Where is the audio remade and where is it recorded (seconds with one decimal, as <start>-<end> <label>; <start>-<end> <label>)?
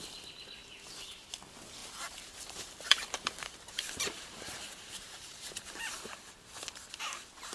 0.0-0.6 recorded; 0.6-1.3 remade; 1.3-1.8 recorded; 1.8-6.3 remade; 6.3-7.5 recorded